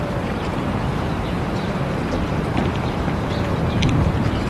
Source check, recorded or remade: remade